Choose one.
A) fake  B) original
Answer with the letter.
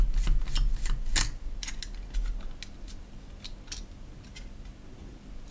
B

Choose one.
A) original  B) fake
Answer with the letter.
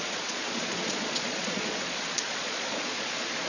B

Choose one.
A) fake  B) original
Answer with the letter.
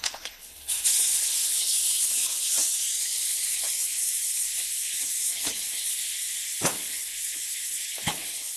A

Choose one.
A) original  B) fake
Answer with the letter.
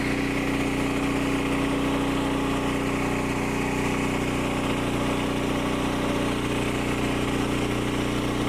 A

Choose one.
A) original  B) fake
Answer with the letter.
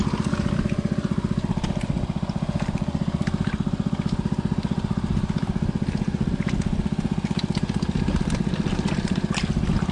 A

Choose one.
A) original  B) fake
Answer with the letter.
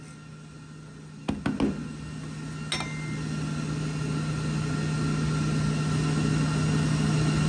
A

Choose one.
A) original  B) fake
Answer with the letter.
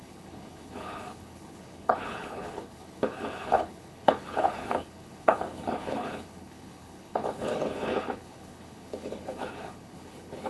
B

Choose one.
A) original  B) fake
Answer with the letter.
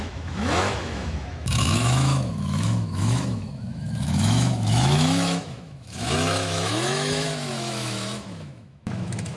B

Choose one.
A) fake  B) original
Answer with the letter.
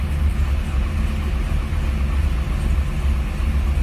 B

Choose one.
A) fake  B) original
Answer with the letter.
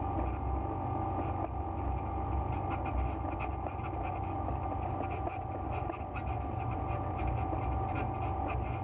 B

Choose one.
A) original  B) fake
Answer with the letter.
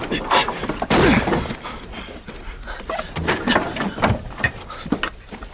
A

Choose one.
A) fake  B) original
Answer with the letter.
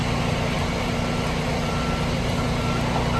B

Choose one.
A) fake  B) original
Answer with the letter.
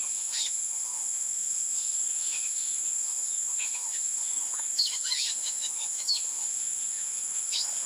A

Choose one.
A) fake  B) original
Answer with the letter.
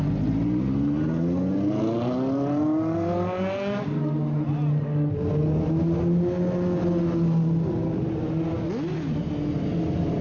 B